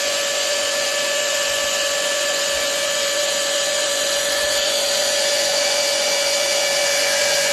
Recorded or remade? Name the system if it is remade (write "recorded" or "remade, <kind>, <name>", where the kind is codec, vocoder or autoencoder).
remade, vocoder, Vocos